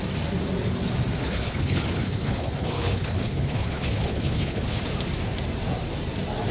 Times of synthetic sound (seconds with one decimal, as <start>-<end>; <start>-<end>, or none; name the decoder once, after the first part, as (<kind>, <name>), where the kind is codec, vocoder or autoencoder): 1.2-4.8 (codec, HILCodec)